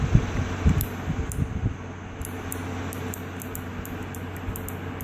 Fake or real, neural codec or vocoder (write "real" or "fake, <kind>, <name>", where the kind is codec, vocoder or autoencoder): real